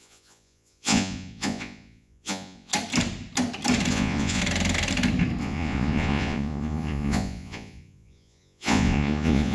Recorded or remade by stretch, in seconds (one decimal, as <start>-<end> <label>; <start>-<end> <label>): 0.0-2.7 remade; 2.7-3.9 recorded; 3.9-4.4 remade; 4.4-5.4 recorded; 5.4-9.5 remade